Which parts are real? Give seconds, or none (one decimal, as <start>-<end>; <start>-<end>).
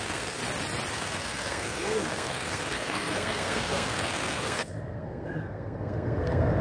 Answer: 0.4-0.9